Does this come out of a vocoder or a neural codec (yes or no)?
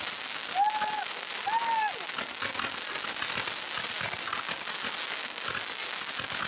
no